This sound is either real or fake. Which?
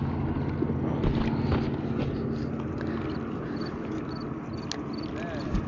real